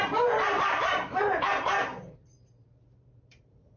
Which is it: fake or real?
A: fake